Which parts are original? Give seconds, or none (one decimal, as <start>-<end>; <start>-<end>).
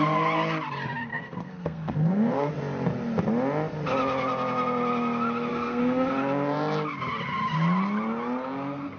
0.0-1.1; 2.5-5.5; 6.1-9.0